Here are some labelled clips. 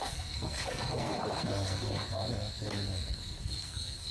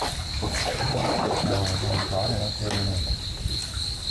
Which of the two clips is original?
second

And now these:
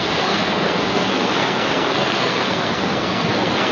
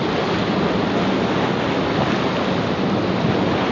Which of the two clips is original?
second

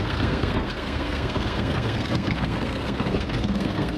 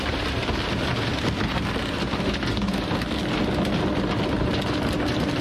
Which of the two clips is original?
second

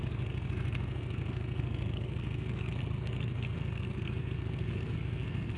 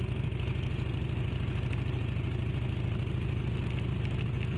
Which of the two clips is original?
second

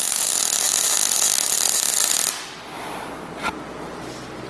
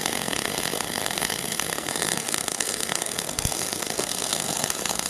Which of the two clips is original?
first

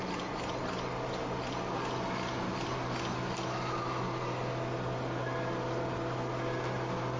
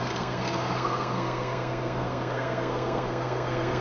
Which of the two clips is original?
first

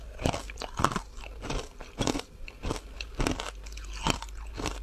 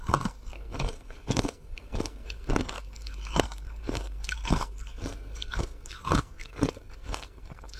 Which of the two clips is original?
first